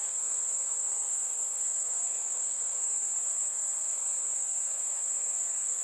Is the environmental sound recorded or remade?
remade